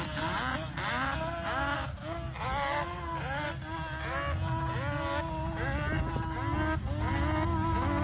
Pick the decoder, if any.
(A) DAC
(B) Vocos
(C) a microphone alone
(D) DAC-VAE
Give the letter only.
C